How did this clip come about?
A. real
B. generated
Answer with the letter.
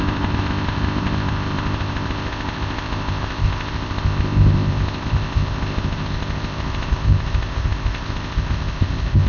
B